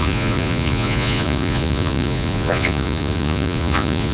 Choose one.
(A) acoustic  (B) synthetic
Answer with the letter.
B